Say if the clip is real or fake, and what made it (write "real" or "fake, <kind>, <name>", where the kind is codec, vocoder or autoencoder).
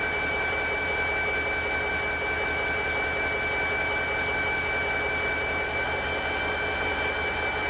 real